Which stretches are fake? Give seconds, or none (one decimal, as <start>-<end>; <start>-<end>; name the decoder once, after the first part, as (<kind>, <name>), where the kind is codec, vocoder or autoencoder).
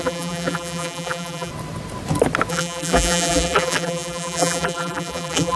0.0-1.5 (vocoder, BigVGAN v2); 2.5-5.6